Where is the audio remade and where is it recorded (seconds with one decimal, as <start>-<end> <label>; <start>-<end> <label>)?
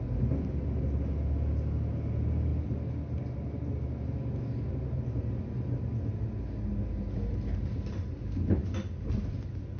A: 0.0-9.8 recorded